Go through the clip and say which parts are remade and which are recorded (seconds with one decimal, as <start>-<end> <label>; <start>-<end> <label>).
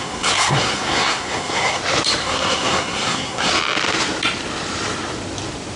0.0-1.8 remade; 1.8-2.2 recorded; 2.2-3.5 remade; 3.5-5.8 recorded